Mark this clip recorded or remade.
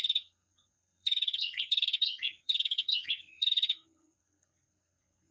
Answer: remade